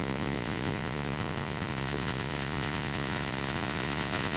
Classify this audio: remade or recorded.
remade